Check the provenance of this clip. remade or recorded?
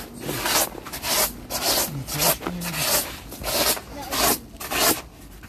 recorded